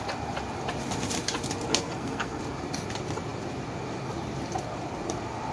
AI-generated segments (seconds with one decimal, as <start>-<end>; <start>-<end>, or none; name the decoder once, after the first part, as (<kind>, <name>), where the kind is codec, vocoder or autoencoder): 1.7-2.4 (codec, SNAC)